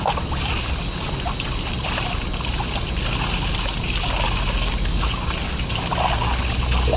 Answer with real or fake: real